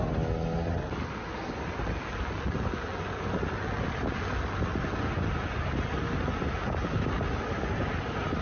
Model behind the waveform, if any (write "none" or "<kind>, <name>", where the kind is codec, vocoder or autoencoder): none